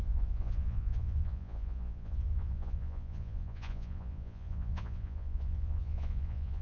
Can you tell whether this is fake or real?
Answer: fake